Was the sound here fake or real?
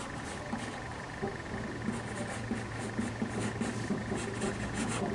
real